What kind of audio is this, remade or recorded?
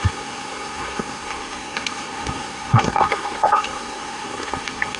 remade